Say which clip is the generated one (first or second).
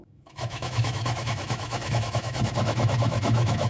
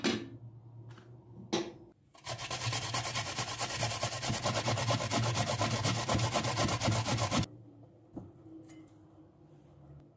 first